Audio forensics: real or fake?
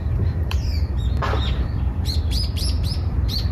fake